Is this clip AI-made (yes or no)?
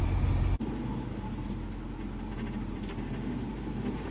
no